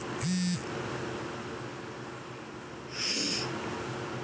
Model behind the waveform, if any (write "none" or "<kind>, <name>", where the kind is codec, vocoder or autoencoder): none